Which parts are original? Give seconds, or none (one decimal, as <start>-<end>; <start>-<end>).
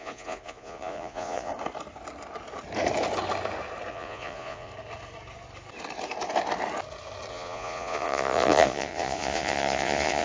1.5-3.9; 4.7-7.3